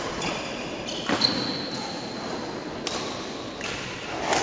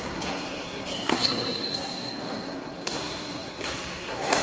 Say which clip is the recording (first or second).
first